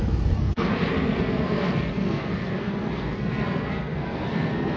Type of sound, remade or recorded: remade